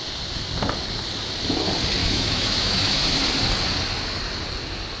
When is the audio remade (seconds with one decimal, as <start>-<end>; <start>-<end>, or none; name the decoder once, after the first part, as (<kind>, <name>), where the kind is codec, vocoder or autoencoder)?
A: 2.0-3.2 (autoencoder, DAC-VAE)

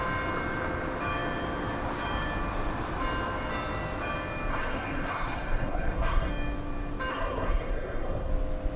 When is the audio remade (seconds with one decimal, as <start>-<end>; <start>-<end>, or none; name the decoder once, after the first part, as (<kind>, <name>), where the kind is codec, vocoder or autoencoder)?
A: 4.5-6.3 (codec, SNAC); 7.1-8.3

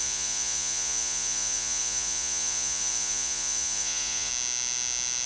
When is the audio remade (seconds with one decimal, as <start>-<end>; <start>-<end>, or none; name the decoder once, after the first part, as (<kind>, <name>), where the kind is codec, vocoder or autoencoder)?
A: 0.0-4.3 (vocoder, Vocos)

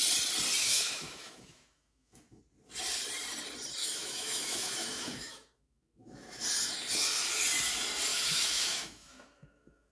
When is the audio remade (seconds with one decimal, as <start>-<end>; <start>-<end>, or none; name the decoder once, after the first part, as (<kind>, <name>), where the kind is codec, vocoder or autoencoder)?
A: 0.6-2.4 (autoencoder, DAC-VAE); 3.8-6.4; 8.1-9.9